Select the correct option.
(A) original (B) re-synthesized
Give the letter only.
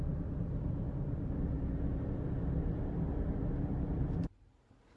A